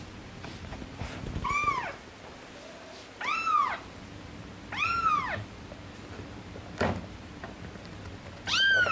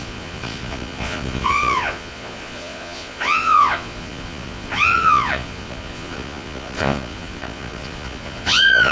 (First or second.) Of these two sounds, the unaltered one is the first